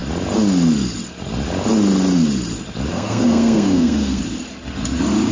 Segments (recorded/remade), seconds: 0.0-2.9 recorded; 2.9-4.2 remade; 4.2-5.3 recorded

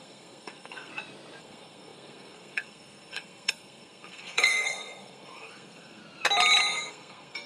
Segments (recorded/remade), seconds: 0.0-0.9 remade; 0.9-1.4 recorded; 1.4-6.0 remade; 6.0-6.9 recorded; 6.9-7.5 remade

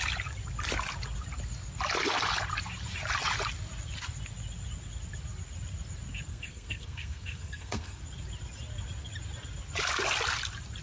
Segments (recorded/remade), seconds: 0.0-6.3 recorded; 6.3-8.0 remade; 8.0-10.8 recorded

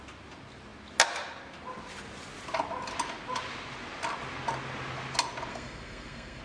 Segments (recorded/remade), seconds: 0.0-5.5 recorded; 5.5-6.4 remade

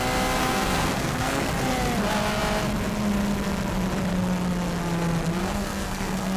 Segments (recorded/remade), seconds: 0.0-0.4 recorded; 0.4-1.5 remade; 1.5-5.4 recorded; 5.4-6.4 remade

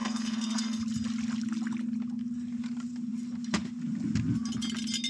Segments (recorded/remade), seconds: 0.0-0.8 remade; 0.8-5.1 recorded

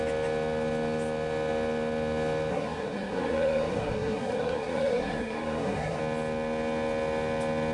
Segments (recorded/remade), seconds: 0.0-2.5 recorded; 2.5-6.0 remade; 6.0-7.7 recorded

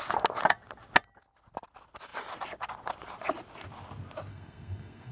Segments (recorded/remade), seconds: 0.0-4.3 recorded; 4.3-5.1 remade